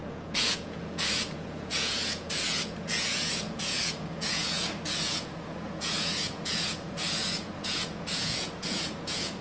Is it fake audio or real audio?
fake